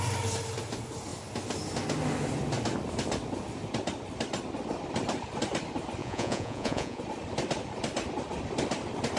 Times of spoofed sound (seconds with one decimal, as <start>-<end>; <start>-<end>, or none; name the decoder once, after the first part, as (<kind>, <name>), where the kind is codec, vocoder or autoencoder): 6.0-7.0 (vocoder, Vocos)